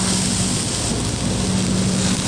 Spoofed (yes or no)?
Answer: no